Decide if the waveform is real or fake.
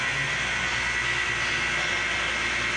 real